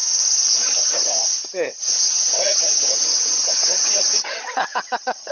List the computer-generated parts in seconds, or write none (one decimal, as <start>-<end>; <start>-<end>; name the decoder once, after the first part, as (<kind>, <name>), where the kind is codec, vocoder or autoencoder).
0.6-5.3 (vocoder, HiFi-GAN)